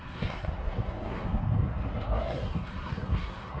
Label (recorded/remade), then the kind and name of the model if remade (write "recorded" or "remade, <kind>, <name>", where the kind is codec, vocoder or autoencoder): remade, codec, SNAC